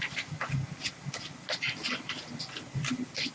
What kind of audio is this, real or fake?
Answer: real